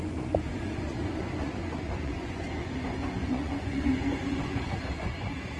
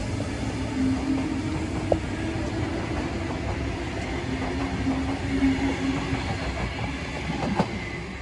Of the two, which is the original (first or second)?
second